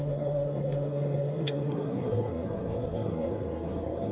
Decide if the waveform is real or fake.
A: fake